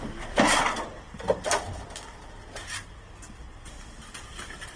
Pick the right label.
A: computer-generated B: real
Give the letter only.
B